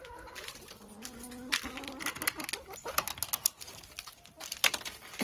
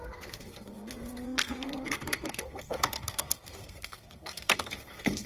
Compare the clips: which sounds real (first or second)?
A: first